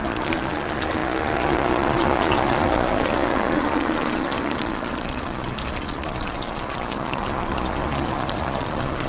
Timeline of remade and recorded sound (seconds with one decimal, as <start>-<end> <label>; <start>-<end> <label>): 0.0-9.1 remade